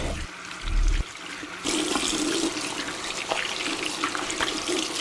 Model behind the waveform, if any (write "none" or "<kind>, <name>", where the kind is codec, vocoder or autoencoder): none